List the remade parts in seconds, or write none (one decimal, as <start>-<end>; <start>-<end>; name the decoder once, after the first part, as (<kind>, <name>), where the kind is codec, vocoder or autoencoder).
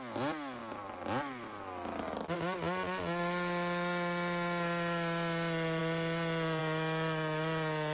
none